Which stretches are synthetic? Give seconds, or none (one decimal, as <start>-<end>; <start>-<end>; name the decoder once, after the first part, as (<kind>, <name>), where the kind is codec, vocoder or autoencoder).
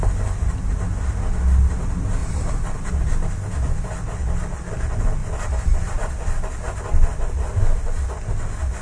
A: 2.2-2.9 (vocoder, BigVGAN v2); 5.2-6.1